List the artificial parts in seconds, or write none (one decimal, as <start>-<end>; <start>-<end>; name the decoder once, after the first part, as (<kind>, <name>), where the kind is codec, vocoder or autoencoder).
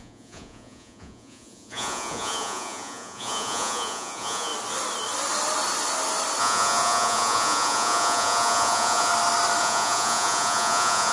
0.0-4.5 (vocoder, Vocos); 6.4-9.1; 9.6-11.1